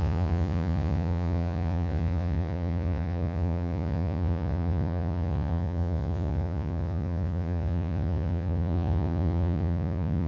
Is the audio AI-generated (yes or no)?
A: yes